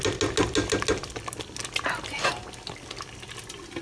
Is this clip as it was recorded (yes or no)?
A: yes